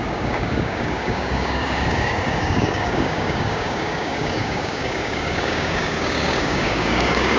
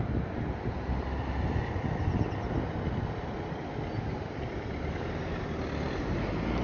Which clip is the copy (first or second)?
first